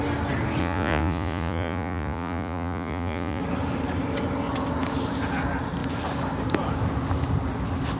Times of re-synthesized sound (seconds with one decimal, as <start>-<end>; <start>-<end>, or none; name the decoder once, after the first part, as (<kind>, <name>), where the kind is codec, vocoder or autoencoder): 0.6-3.4 (vocoder, Vocos)